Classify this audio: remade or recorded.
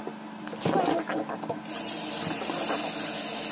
recorded